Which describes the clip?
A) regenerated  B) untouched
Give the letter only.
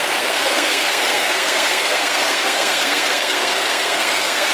A